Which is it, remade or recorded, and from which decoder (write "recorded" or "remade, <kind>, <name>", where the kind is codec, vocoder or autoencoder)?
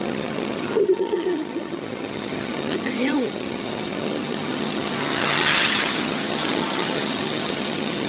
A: remade, vocoder, HiFi-GAN